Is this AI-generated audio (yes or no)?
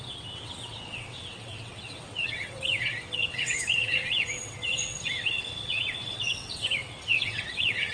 yes